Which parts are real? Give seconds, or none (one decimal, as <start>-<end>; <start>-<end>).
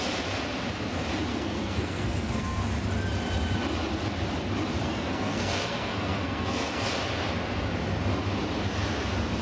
0.0-1.3; 2.6-4.8; 6.9-9.4